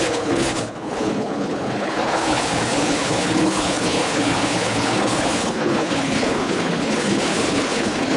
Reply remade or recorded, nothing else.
remade